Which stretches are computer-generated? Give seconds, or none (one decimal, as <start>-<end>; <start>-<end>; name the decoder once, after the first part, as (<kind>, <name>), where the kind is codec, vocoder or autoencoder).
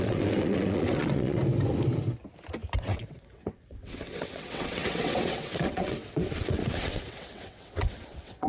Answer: 0.0-1.4 (vocoder, WaveNeXt); 2.8-8.5